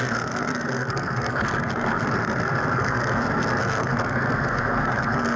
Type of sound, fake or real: fake